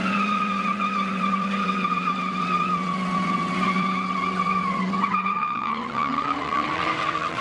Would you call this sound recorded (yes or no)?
no